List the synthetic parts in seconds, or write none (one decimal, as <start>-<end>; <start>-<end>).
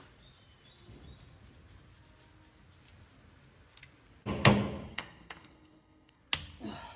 4.9-6.2